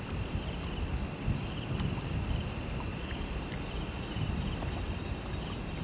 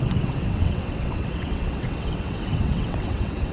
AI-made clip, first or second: second